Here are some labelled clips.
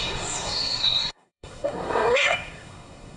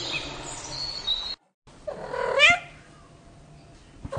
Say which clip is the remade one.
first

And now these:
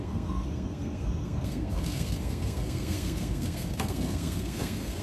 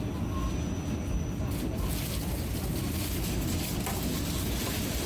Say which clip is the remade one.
first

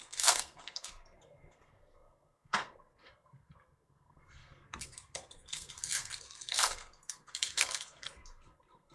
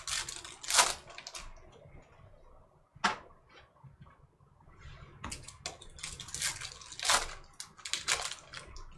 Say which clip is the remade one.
first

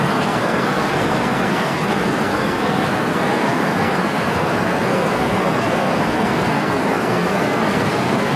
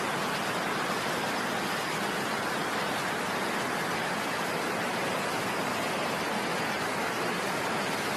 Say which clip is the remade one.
first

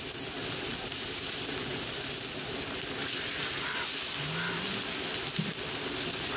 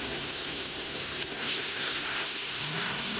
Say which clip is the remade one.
second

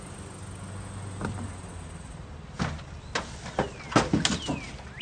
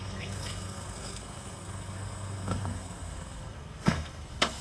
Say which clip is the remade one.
second